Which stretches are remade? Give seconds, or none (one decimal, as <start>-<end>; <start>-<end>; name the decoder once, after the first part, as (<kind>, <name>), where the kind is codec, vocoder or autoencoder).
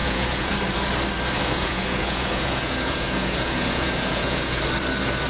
0.0-0.5 (vocoder, Vocos); 1.4-4.6